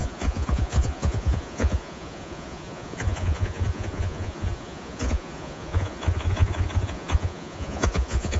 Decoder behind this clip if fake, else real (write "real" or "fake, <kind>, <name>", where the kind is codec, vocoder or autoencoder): fake, vocoder, Vocos